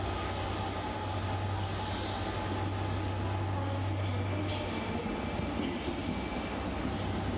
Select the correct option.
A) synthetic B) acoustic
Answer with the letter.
B